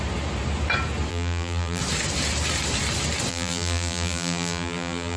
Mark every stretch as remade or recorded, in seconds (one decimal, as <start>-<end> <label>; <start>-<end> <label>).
0.0-1.1 recorded; 1.1-1.8 remade; 1.8-3.3 recorded; 3.3-5.2 remade

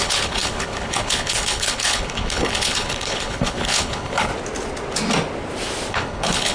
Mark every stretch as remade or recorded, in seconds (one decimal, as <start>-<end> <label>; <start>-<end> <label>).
0.0-4.3 remade; 4.3-5.9 recorded; 5.9-6.5 remade

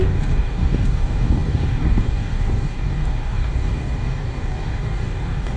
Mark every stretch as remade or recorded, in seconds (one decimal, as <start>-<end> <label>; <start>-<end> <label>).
0.0-5.6 remade

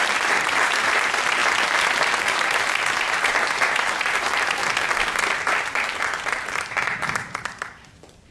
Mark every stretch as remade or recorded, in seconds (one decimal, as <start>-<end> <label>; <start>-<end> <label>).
0.0-1.4 remade; 1.4-2.3 recorded; 2.3-4.6 remade; 4.6-5.4 recorded; 5.4-8.3 remade